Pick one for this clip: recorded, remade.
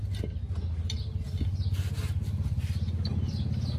recorded